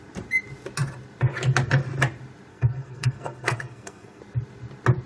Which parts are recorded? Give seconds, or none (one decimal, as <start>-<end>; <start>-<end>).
0.0-2.5; 4.2-5.1